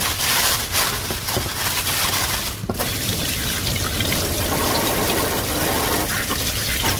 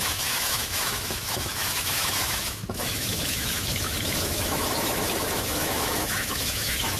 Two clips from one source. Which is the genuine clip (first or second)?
first